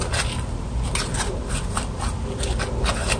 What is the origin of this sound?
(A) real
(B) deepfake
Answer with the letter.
A